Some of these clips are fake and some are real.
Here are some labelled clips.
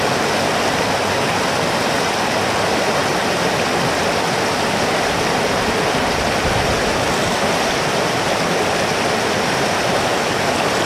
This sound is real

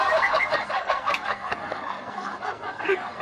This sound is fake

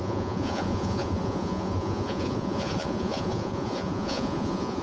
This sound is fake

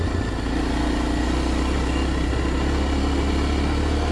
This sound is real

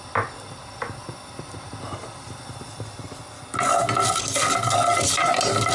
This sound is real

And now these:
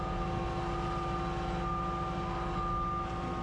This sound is real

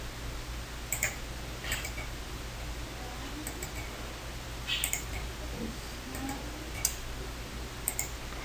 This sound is real